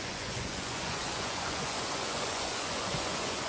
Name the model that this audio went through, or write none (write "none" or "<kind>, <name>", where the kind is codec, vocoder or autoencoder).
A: vocoder, Vocos